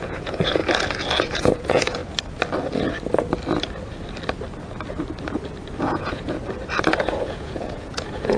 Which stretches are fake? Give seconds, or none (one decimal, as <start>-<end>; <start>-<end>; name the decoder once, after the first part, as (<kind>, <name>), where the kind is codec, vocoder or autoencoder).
0.0-0.6 (vocoder, Vocos); 1.2-2.0; 5.8-6.4; 7.0-8.4